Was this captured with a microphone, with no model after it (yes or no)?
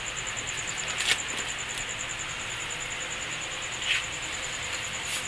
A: yes